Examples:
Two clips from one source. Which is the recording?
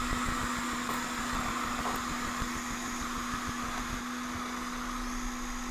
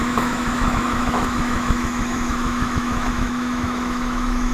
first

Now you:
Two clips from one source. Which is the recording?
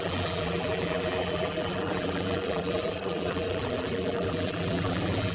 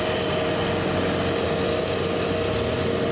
second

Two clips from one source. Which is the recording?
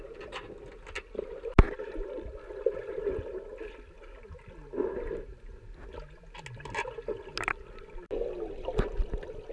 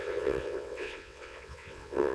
first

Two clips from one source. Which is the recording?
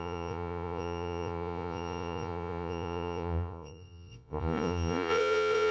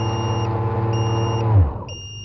second